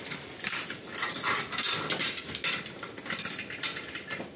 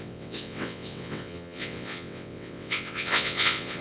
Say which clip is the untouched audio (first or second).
first